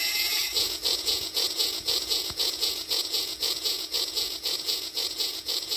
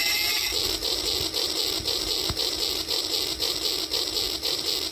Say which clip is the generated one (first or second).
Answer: first